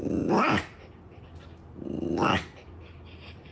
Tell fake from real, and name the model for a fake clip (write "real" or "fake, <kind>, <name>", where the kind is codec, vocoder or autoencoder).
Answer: real